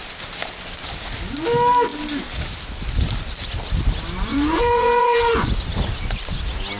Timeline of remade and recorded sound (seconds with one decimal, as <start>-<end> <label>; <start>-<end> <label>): 0.0-4.3 recorded; 4.3-5.5 remade; 5.5-6.8 recorded